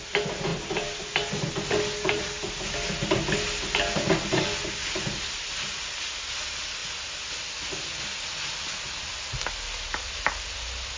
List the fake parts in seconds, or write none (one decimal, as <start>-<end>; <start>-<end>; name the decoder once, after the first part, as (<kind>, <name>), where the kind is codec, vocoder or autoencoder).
none